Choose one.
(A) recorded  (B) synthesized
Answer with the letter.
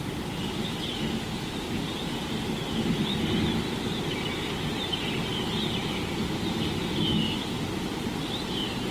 A